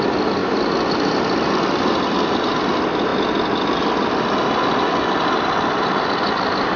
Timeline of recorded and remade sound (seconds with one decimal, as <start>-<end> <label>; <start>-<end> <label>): 0.0-6.8 recorded

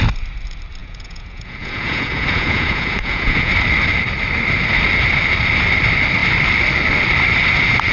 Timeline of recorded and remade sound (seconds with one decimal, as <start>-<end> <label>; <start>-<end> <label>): 0.0-0.8 recorded; 0.8-3.5 remade; 3.5-7.9 recorded

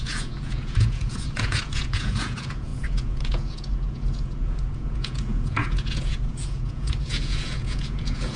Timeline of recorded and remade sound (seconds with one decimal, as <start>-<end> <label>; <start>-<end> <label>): 0.0-8.4 remade

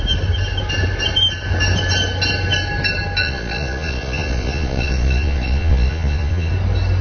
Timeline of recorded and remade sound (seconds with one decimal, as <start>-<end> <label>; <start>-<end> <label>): 0.0-3.2 recorded; 3.2-6.5 remade; 6.5-7.0 recorded

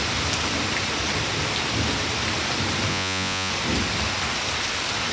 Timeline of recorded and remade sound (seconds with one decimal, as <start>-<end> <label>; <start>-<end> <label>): 0.0-2.9 recorded; 2.9-3.5 remade; 3.5-5.1 recorded

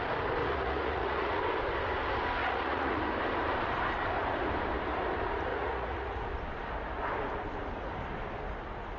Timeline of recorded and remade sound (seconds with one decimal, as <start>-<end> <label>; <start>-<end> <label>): 0.0-0.4 recorded; 0.4-1.4 remade; 1.4-2.4 recorded; 2.4-3.0 remade; 3.0-5.5 recorded; 5.5-6.2 remade; 6.2-9.0 recorded